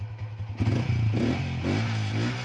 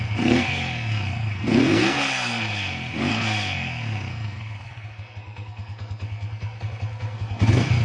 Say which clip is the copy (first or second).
second